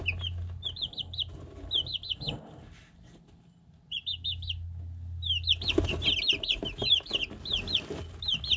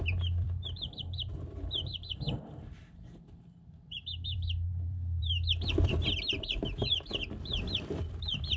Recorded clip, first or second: first